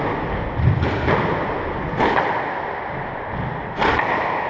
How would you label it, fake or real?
real